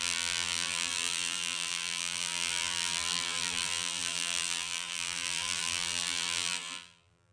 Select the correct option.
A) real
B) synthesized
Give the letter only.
B